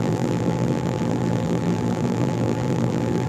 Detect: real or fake fake